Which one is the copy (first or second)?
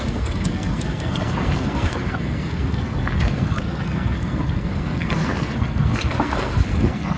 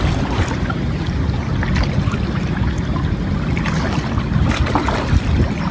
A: first